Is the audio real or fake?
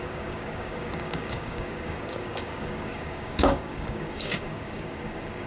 fake